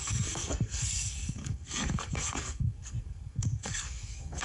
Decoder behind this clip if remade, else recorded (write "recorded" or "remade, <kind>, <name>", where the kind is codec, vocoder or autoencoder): remade, codec, SNAC